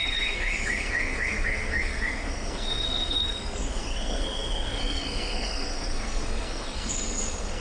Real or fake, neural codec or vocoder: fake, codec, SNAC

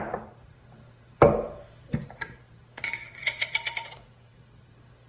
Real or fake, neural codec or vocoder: fake, vocoder, BigVGAN v2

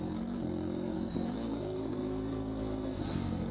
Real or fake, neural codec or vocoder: fake, codec, SNAC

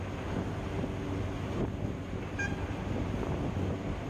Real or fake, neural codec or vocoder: real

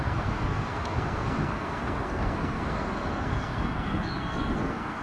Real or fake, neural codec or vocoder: fake, codec, SNAC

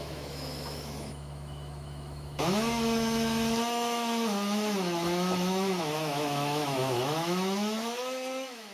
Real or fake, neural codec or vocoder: fake, autoencoder, DAC-VAE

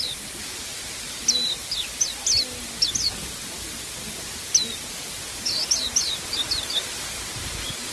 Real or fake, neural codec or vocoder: real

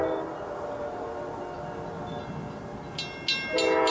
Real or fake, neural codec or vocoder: real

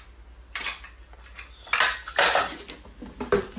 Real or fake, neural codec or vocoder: real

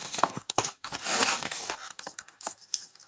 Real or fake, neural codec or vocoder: fake, codec, DAC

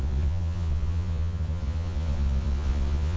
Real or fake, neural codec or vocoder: fake, vocoder, Vocos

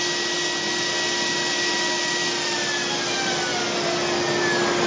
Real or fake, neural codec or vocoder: real